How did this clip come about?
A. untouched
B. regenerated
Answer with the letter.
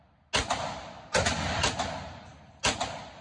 A